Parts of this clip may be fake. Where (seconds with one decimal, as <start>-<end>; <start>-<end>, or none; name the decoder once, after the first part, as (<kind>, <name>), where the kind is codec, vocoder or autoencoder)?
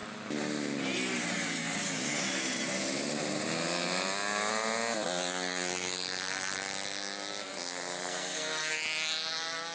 8.0-8.7 (codec, SNAC)